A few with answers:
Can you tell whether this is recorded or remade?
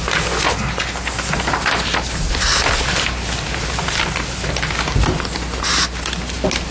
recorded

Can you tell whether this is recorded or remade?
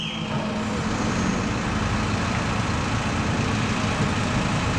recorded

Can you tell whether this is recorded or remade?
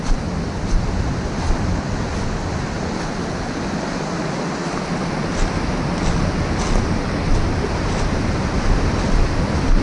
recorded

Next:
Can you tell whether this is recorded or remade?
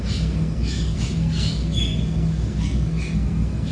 remade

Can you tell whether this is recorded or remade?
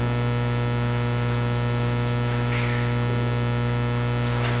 recorded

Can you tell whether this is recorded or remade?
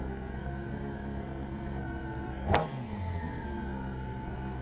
remade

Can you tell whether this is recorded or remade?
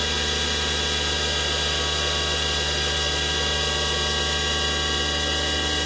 recorded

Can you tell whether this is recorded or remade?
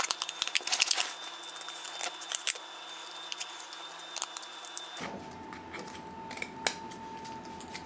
recorded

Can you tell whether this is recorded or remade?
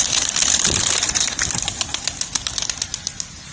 recorded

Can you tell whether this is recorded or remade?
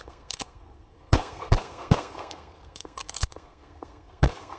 remade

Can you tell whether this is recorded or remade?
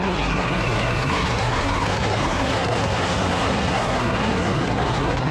remade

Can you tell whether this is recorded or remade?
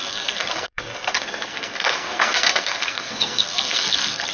remade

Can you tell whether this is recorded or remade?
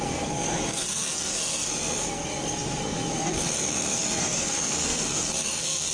remade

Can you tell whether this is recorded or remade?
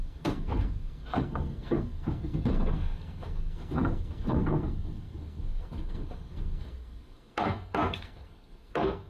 remade